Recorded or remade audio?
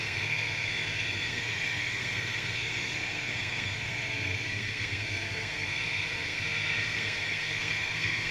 remade